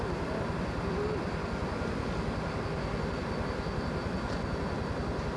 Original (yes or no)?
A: yes